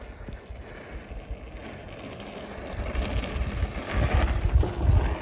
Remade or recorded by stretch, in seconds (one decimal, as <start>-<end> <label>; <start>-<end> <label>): 0.0-1.6 recorded; 1.6-4.7 remade; 4.7-5.2 recorded